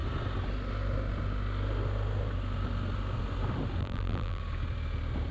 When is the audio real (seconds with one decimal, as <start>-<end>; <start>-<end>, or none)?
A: 0.0-3.8; 4.4-5.3